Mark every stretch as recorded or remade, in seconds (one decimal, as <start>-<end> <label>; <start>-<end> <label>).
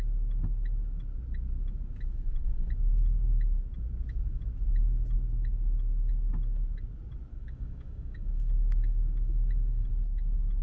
0.0-7.3 recorded; 7.3-9.9 remade; 9.9-10.6 recorded